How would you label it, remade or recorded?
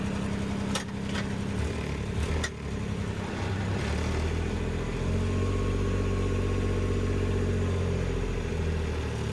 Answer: recorded